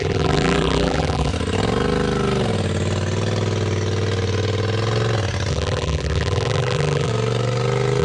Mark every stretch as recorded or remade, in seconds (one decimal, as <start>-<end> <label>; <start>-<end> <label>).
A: 0.0-1.3 remade; 1.3-5.5 recorded; 5.5-7.1 remade; 7.1-8.0 recorded